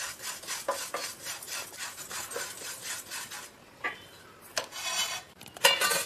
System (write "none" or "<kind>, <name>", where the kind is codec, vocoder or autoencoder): vocoder, BigVGAN v2